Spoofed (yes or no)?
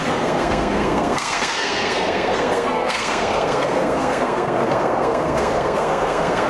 yes